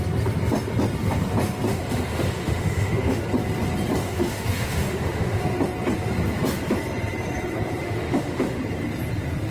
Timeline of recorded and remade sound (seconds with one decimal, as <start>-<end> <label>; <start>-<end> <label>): 0.0-1.7 recorded; 1.7-3.2 remade; 3.2-4.0 recorded; 4.0-5.4 remade; 5.4-7.8 recorded; 7.8-8.6 remade; 8.6-9.5 recorded